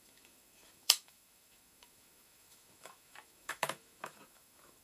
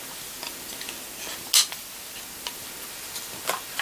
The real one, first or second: second